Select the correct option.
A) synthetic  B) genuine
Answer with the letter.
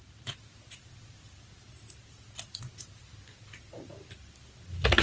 B